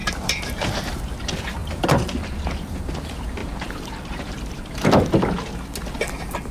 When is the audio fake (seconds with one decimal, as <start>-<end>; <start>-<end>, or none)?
0.0-1.1; 1.6-3.0; 3.4-4.7